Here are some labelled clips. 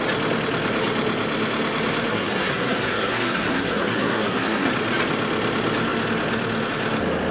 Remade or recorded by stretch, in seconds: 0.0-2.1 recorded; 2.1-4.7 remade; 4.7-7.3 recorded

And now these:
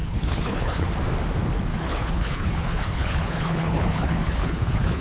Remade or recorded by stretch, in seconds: 0.0-0.9 remade; 0.9-1.7 recorded; 1.7-5.0 remade

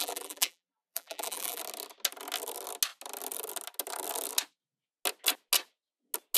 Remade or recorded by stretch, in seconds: 0.0-1.6 remade; 1.6-6.4 recorded

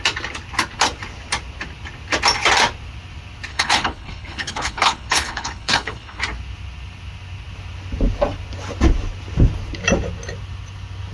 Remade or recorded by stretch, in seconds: 0.0-3.5 recorded; 3.5-6.2 remade; 6.2-11.1 recorded

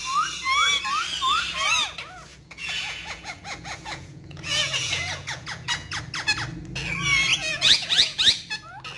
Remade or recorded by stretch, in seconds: 0.0-2.3 recorded; 2.3-6.0 remade; 6.0-7.3 recorded; 7.3-8.2 remade; 8.2-9.0 recorded